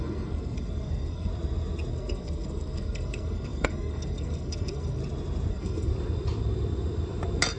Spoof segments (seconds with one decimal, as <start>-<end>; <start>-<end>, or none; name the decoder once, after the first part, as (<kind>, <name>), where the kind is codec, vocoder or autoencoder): 0.0-1.3 (codec, SNAC); 1.9-5.0; 5.5-5.9